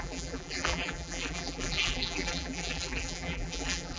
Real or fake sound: fake